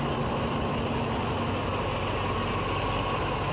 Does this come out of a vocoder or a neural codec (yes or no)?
no